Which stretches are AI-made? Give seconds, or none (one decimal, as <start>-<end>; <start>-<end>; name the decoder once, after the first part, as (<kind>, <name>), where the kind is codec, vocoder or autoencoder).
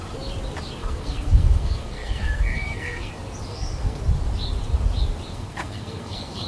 0.8-3.1 (codec, SNAC); 3.5-4.0; 5.3-6.5